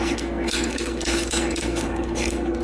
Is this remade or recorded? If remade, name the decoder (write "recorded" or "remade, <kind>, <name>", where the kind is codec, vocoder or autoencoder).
remade, codec, SNAC